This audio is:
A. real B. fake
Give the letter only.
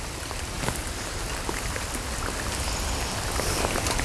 A